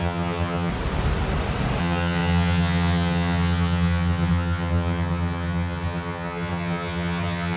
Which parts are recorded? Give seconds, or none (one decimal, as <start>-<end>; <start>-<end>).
0.7-1.8